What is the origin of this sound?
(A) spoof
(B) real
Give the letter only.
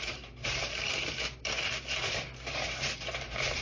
A